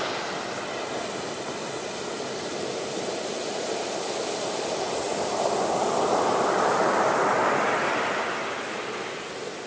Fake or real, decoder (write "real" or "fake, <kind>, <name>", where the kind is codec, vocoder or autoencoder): real